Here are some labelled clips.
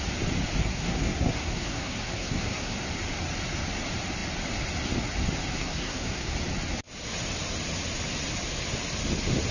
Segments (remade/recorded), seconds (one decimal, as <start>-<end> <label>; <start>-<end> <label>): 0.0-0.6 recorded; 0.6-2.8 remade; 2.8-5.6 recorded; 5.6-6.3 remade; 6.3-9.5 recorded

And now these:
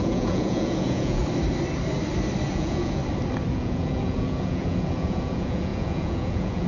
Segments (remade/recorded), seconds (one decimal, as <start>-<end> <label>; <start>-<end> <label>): 0.0-1.2 remade; 1.2-2.5 recorded; 2.5-3.0 remade; 3.0-3.5 recorded; 3.5-6.7 remade

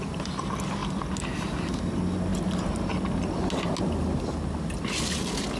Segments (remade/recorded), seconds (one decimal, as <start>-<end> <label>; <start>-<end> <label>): 0.0-5.6 recorded

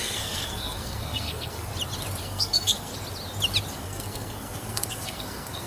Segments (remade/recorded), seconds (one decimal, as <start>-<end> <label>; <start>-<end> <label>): 0.0-1.7 remade; 1.7-2.2 recorded; 2.2-2.9 remade; 2.9-3.7 recorded; 3.7-5.7 remade

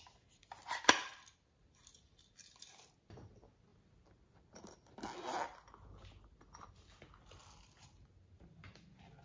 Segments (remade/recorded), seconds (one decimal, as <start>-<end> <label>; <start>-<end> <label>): 0.0-9.2 recorded

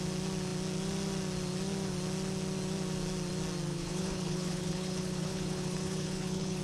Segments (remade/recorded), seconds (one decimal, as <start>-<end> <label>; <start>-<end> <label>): 0.0-3.7 recorded; 3.7-6.6 remade

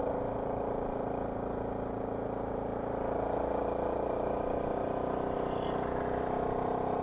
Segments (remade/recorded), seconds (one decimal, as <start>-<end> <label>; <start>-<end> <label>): 0.0-7.0 recorded

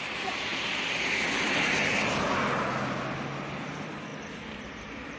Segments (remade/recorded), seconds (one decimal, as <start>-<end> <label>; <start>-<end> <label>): 0.0-0.5 remade; 0.5-3.6 recorded; 3.6-5.2 remade